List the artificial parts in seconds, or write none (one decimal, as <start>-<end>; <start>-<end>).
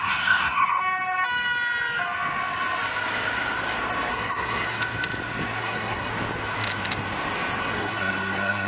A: 0.0-0.8; 4.1-4.8; 5.6-6.1; 7.6-8.7